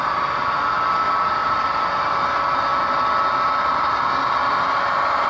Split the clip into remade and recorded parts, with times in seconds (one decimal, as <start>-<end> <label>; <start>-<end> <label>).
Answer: 0.0-5.3 recorded